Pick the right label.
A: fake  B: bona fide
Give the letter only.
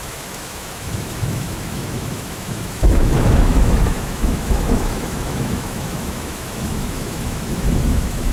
A